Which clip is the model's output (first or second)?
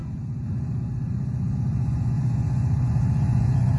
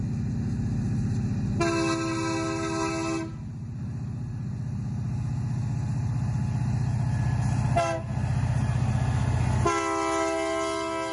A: first